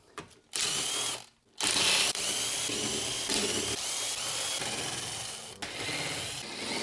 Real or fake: real